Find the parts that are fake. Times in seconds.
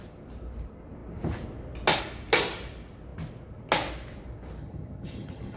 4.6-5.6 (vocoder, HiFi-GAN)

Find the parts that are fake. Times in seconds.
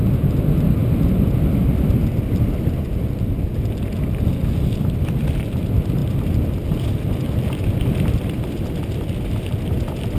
none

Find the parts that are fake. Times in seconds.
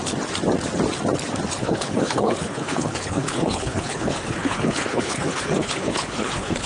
1.6-6.7 (codec, HILCodec)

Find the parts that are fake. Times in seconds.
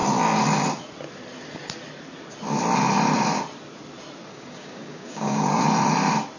4.3-5.6 (codec, DAC)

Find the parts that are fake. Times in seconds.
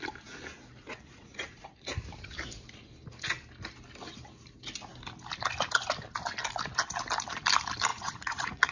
0.8-1.8 (vocoder, Vocos); 7.9-8.7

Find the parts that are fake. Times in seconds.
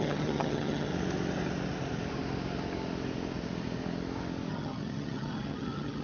0.0-0.9 (vocoder, HiFi-GAN); 4.5-6.0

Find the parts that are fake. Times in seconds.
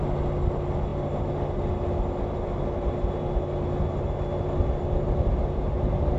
none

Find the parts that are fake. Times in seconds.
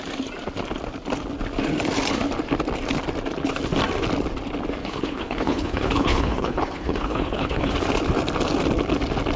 4.8-7.7 (codec, HILCodec)